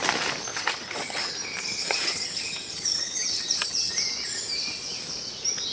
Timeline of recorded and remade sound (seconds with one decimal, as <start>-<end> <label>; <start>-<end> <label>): 0.0-0.5 recorded; 0.5-1.3 remade; 1.3-1.8 recorded; 1.8-3.9 remade; 3.9-5.7 recorded